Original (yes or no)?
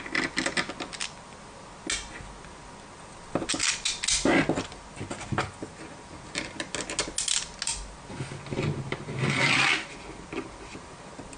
yes